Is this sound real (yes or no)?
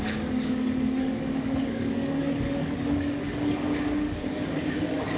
no